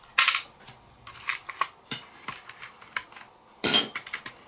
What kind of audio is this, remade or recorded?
recorded